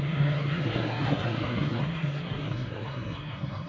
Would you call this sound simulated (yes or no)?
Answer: yes